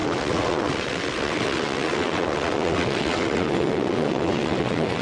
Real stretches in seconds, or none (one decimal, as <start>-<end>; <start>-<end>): none